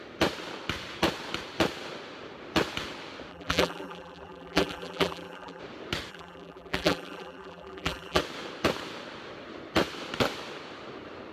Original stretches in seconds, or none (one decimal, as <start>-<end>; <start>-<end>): 0.0-3.3; 5.6-6.1; 8.2-11.3